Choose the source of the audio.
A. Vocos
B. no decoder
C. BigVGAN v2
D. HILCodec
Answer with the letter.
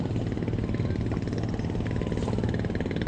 B